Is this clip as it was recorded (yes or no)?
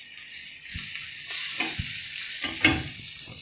yes